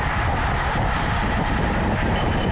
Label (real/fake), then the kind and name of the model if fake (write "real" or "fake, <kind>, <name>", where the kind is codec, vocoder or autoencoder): real